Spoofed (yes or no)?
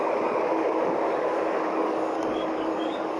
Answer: yes